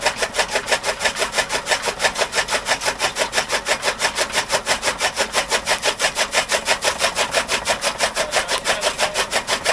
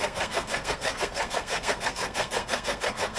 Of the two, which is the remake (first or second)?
second